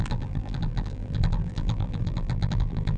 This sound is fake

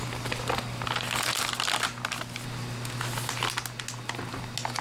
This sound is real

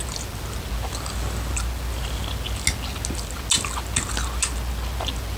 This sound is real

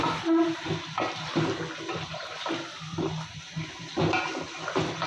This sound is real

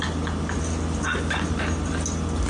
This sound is real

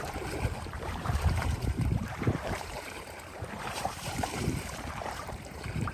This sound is fake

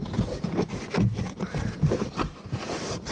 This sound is fake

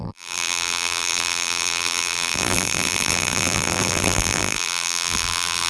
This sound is fake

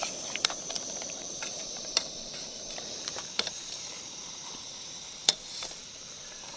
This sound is fake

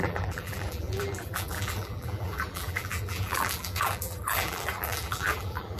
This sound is fake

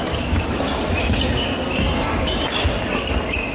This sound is real